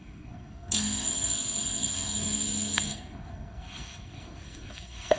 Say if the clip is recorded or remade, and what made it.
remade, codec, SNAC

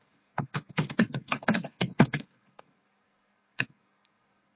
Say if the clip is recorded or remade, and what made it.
remade, codec, SNAC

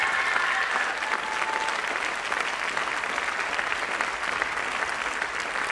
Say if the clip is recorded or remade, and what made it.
recorded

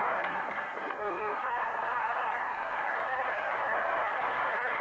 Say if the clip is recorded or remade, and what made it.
remade, codec, SNAC